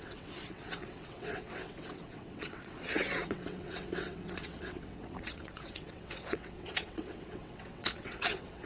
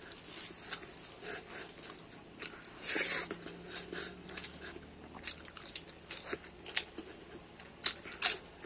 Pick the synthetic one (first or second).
first